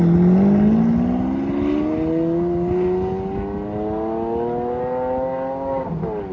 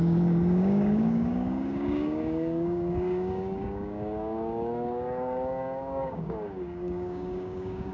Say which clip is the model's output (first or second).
second